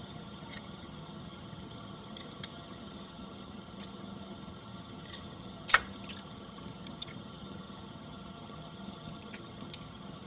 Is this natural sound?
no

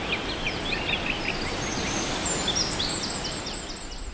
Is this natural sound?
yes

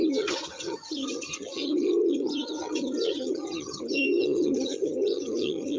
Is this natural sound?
no